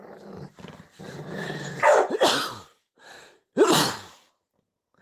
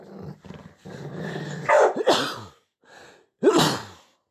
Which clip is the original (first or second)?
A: second